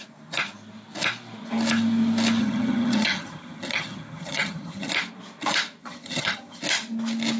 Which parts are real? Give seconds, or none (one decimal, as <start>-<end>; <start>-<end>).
0.0-2.4; 4.9-5.8; 6.6-7.4